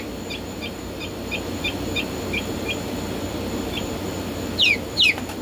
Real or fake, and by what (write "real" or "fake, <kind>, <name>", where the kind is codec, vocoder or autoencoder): fake, vocoder, BigVGAN v2